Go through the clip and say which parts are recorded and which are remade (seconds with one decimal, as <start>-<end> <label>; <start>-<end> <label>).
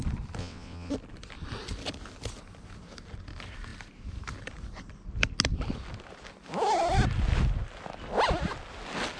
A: 0.0-0.4 recorded; 0.4-0.9 remade; 0.9-9.2 recorded